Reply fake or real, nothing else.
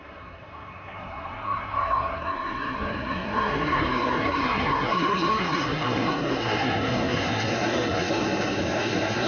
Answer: fake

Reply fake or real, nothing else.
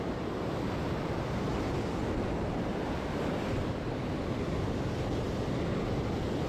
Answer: real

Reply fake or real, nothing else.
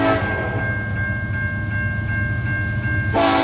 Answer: real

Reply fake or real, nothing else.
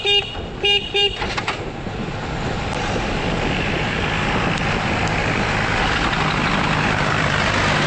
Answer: real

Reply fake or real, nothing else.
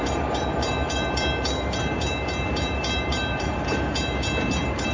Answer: fake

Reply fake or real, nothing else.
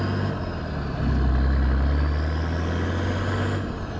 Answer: real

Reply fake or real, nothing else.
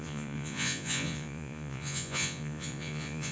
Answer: fake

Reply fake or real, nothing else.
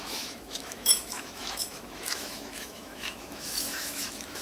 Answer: fake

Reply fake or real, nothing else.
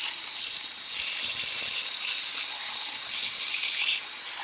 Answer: fake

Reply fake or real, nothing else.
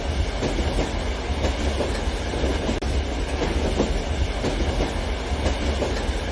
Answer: real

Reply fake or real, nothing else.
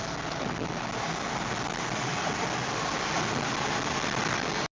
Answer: real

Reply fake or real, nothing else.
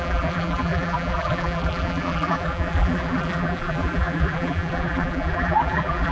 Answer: fake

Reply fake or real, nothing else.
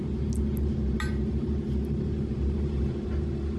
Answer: real